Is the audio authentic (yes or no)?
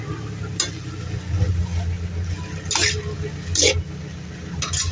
yes